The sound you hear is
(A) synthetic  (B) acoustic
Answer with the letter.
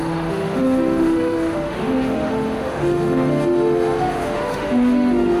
A